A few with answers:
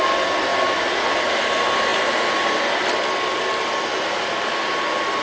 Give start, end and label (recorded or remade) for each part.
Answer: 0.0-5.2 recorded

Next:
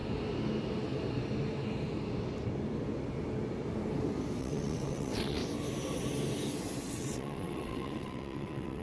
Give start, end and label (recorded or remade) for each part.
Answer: 0.0-4.4 recorded; 4.4-5.4 remade; 5.4-6.9 recorded; 6.9-8.8 remade

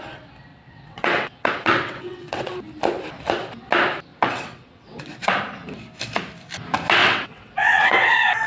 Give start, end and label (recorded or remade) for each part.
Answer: 0.0-0.5 recorded; 0.5-2.5 remade; 2.5-4.1 recorded; 4.1-5.3 remade; 5.3-7.0 recorded; 7.0-8.1 remade; 8.1-8.5 recorded

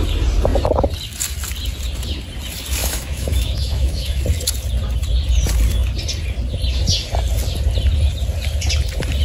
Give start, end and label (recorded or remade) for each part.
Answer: 0.0-2.8 recorded; 2.8-4.2 remade; 4.2-9.2 recorded

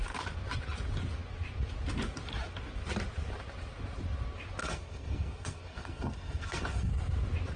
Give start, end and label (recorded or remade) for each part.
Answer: 0.0-4.6 recorded; 4.6-6.9 remade; 6.9-7.6 recorded

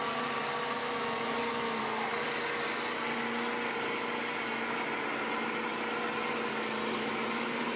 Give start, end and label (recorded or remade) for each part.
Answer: 0.0-0.8 recorded; 0.8-1.8 remade; 1.8-7.8 recorded

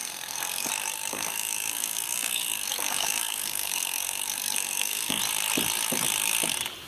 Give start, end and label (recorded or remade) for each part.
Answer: 0.0-0.7 remade; 0.7-1.1 recorded; 1.1-5.2 remade; 5.2-6.9 recorded